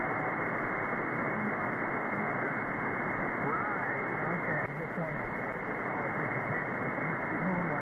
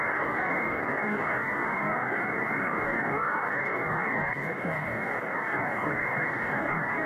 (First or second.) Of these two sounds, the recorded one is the first